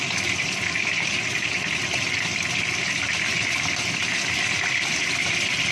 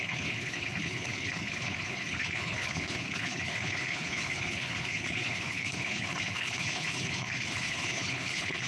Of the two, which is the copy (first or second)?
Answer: second